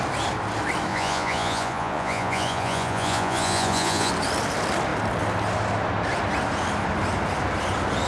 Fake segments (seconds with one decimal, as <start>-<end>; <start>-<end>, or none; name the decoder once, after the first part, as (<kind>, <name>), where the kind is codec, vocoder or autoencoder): 0.9-4.1 (vocoder, Vocos)